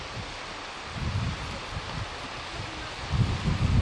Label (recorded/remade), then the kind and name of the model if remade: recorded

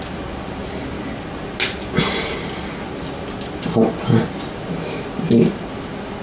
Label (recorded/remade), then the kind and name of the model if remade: recorded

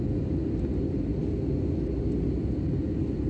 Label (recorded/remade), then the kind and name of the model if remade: recorded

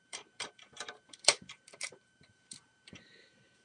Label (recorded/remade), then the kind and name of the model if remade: remade, vocoder, BigVGAN v2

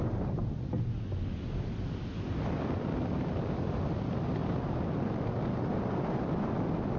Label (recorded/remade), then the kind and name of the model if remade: recorded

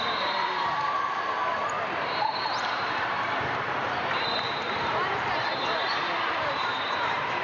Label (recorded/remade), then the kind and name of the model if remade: remade, vocoder, BigVGAN v2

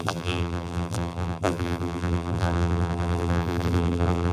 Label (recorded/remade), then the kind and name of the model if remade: remade, vocoder, BigVGAN v2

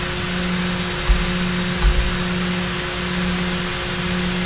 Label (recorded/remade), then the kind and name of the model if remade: recorded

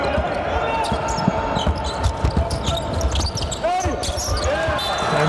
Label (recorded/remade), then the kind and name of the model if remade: recorded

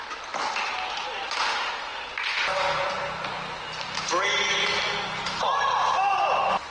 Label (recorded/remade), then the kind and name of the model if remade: recorded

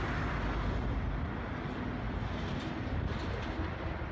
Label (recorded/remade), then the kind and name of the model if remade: recorded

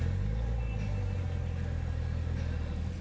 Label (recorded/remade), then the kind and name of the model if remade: recorded